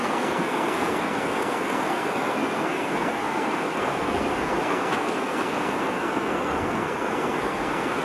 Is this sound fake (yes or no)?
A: yes